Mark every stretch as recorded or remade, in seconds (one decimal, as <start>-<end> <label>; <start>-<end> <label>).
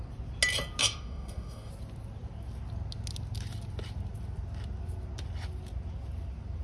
0.0-0.8 recorded; 0.8-1.7 remade; 1.7-6.6 recorded